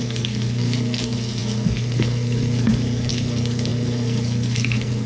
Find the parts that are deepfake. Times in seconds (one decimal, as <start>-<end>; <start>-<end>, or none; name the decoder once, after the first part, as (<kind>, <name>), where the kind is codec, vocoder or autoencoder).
0.0-5.1 (codec, SNAC)